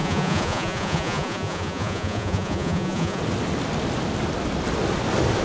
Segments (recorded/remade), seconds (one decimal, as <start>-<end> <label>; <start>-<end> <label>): 0.0-3.2 remade; 3.2-5.4 recorded